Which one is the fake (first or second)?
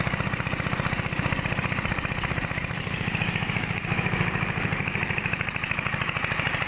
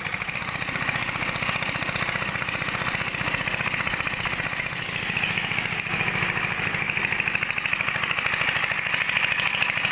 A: first